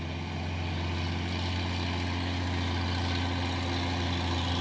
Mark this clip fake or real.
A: real